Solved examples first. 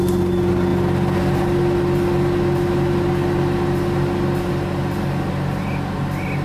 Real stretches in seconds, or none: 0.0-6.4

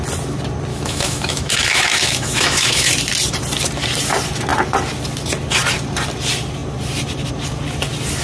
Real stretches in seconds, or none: 0.0-0.7; 2.9-8.2

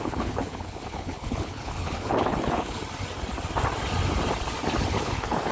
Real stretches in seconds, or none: 2.8-5.0

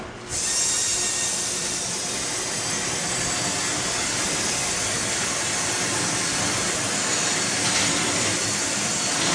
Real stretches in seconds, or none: 0.0-0.9; 1.9-3.5; 8.4-9.3

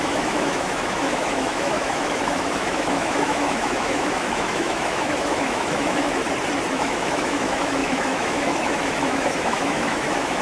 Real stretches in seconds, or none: 6.2-6.7

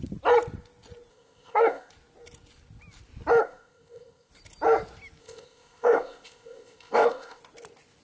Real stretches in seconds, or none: 0.0-1.1; 1.9-3.4; 4.3-5.2; 7.4-8.0

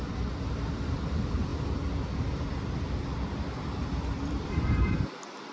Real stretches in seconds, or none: none